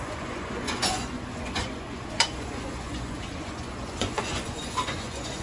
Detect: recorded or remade remade